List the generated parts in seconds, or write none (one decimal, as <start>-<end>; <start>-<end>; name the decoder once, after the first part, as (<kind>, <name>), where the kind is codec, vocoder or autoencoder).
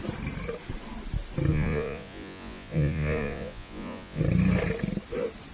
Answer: 1.5-4.2 (vocoder, Vocos)